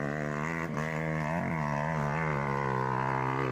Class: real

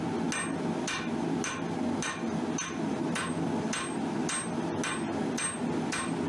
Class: real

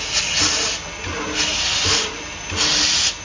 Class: real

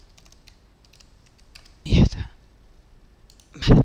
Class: real